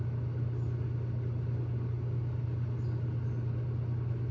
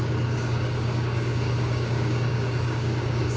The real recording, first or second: first